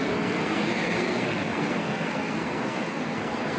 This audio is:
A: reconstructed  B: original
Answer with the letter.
A